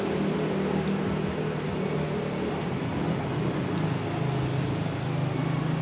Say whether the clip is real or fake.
real